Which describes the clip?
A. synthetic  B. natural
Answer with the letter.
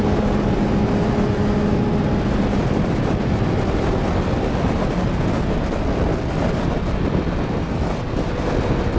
B